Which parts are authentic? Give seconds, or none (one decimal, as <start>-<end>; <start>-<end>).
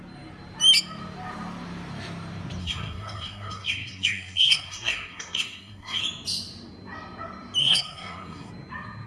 0.0-2.6; 6.0-7.6; 8.5-9.1